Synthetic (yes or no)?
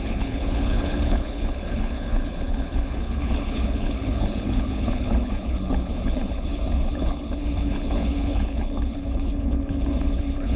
yes